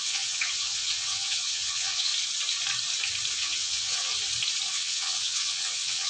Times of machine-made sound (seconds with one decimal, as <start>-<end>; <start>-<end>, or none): 0.0-2.1; 3.3-4.1; 4.7-6.1